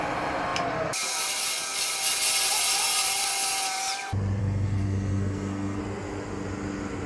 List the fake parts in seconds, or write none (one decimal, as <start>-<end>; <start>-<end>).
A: 4.4-5.8

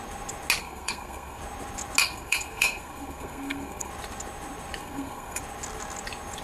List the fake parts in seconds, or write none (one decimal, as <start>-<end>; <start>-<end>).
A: 0.6-1.4; 2.0-3.9; 4.8-5.4